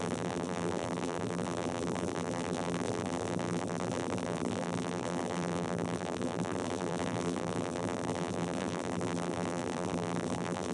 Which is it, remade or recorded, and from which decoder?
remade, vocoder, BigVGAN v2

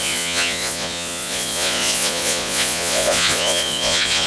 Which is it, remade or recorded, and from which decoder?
remade, vocoder, Vocos